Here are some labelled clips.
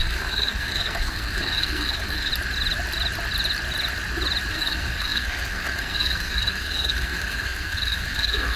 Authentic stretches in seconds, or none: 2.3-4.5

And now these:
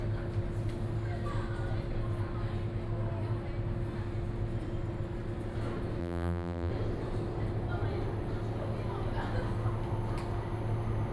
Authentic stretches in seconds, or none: 0.0-6.0; 6.7-11.1

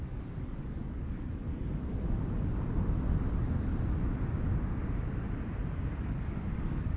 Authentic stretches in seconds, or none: 1.9-6.0

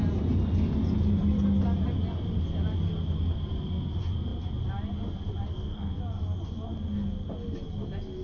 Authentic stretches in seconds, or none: 0.0-5.5; 6.0-8.2

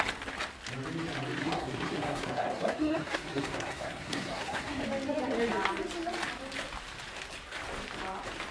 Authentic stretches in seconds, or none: 0.0-1.4; 4.8-8.5